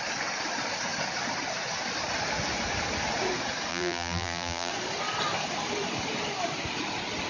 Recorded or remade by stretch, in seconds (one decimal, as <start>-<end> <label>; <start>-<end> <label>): 0.0-3.7 recorded; 3.7-4.7 remade; 4.7-7.3 recorded